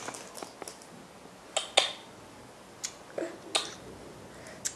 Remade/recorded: recorded